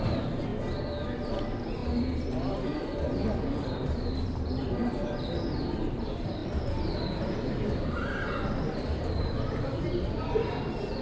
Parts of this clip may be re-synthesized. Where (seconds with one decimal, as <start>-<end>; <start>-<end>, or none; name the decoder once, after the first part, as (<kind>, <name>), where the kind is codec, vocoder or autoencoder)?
0.0-0.5 (vocoder, BigVGAN v2); 1.3-1.8; 2.6-6.4; 9.0-11.0